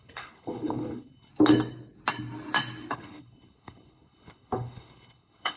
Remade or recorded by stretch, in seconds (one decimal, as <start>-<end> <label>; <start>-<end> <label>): 0.0-1.3 remade; 1.3-2.9 recorded; 2.9-5.6 remade